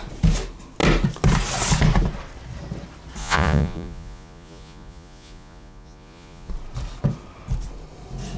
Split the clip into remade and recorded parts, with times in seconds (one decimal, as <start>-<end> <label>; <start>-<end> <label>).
0.0-3.2 recorded; 3.2-6.5 remade; 6.5-8.4 recorded